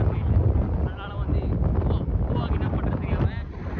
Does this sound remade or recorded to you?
recorded